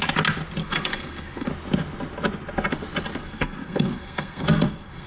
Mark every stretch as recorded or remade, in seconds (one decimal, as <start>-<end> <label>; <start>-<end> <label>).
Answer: 0.0-0.6 recorded; 0.6-1.5 remade; 1.5-3.2 recorded; 3.2-5.1 remade